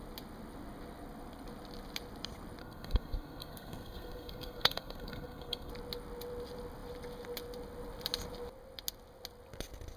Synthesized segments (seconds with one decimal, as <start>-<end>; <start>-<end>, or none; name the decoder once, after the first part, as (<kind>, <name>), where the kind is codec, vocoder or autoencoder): 2.6-5.7 (codec, SNAC)